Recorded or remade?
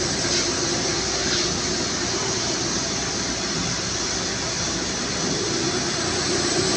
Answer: recorded